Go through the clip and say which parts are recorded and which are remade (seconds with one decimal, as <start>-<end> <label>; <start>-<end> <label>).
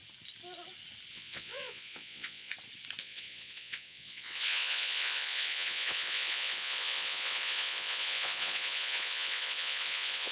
0.0-1.1 recorded; 1.1-2.5 remade; 2.5-3.0 recorded; 3.0-10.3 remade